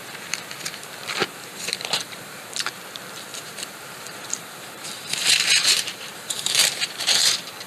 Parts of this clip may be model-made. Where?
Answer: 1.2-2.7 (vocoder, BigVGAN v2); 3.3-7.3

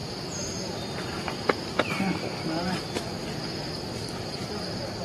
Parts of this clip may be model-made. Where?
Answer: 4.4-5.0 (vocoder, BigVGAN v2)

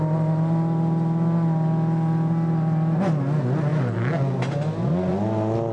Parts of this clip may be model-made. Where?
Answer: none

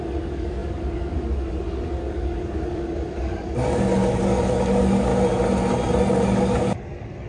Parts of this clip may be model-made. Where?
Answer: 0.0-5.1 (codec, DAC); 6.1-7.3

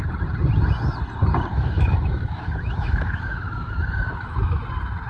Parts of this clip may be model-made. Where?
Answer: 1.5-4.6 (autoencoder, DAC-VAE)

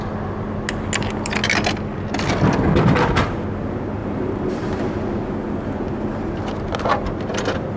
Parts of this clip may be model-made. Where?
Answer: 4.0-4.9 (vocoder, BigVGAN v2)